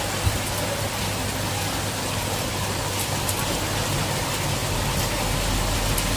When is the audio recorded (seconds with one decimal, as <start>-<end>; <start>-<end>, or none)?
4.6-6.2